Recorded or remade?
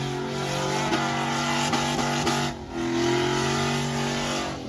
recorded